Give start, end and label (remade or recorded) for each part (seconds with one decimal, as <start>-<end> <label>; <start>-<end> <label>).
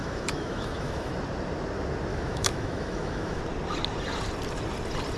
0.0-1.1 remade; 1.1-2.1 recorded; 2.1-3.4 remade; 3.4-5.2 recorded